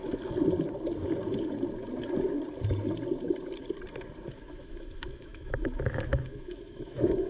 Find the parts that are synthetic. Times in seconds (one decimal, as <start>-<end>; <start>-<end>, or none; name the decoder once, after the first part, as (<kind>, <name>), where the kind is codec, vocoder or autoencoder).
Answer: 4.4-7.3 (autoencoder, DAC-VAE)